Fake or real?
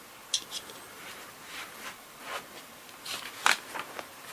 real